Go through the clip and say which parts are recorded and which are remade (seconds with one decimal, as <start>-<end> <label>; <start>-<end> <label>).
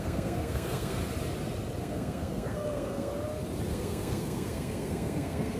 0.0-1.0 remade; 1.0-1.8 recorded; 1.8-3.1 remade; 3.1-3.7 recorded; 3.7-5.6 remade